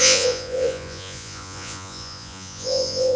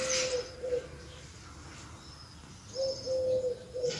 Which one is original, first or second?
second